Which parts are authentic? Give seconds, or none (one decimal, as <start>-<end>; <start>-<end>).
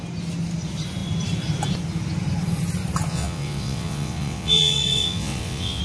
0.0-3.1